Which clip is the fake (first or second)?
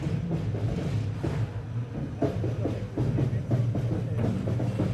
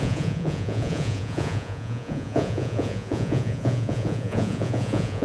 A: second